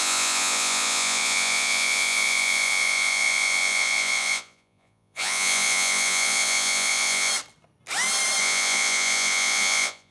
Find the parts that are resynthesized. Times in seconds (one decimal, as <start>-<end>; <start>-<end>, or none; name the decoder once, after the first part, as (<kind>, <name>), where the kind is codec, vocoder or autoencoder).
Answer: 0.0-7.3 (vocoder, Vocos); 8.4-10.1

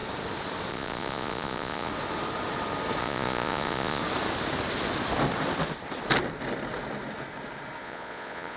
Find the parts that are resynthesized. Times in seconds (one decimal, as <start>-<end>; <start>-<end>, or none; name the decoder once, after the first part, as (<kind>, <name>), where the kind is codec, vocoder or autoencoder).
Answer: 0.7-1.9 (vocoder, Vocos); 3.0-4.0; 7.8-8.6

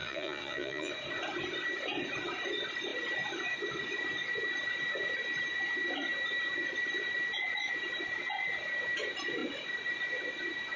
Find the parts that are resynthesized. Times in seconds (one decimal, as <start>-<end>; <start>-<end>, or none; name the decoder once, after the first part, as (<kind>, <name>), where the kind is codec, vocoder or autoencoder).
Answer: 0.0-0.9 (vocoder, Vocos)